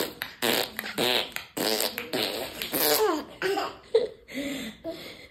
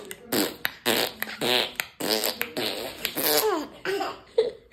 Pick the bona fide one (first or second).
second